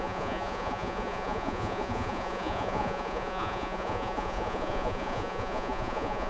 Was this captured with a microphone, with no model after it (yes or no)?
no